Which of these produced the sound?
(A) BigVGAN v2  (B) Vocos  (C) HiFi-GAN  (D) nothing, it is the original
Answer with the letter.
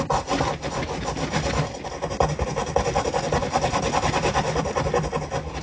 D